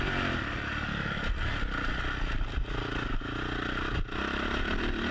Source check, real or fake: real